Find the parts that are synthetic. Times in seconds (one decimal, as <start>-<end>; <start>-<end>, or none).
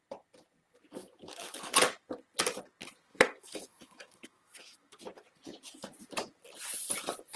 1.0-1.6; 3.1-5.0